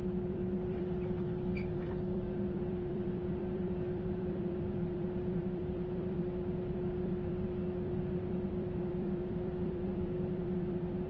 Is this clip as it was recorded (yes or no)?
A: no